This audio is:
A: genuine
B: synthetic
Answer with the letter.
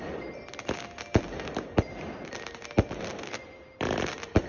A